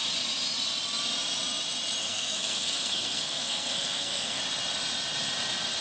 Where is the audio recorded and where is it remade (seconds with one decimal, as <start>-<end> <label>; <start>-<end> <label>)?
0.0-2.0 recorded; 2.0-4.4 remade; 4.4-5.8 recorded